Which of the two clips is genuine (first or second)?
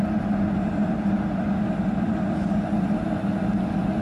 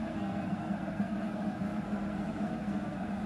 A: first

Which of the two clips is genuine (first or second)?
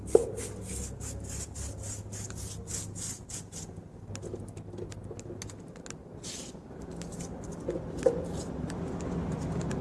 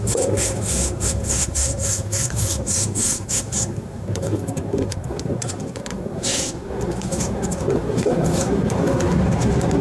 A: first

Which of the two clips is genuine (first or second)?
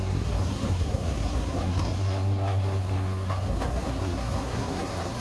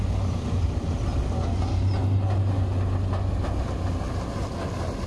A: second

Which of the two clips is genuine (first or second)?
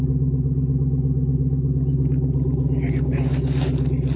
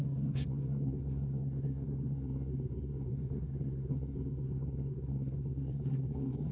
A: first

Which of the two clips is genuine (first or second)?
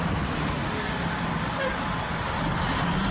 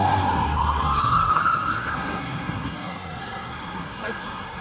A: first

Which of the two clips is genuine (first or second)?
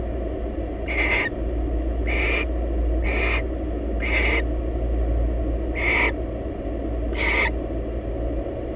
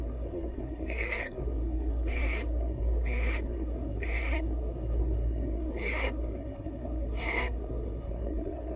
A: first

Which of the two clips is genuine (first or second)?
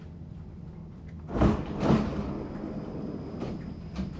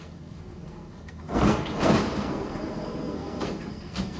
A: first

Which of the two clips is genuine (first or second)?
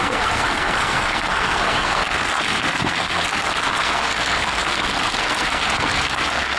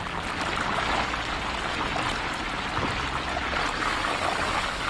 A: second